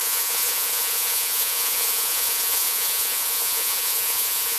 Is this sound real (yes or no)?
no